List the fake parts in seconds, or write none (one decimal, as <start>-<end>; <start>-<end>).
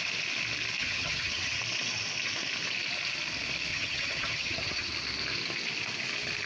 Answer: 0.8-1.6; 3.7-4.9